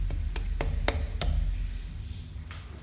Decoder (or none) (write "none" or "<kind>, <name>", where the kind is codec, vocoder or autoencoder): none